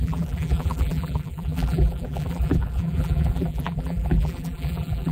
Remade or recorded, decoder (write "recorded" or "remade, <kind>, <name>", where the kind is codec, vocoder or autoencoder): remade, vocoder, BigVGAN v2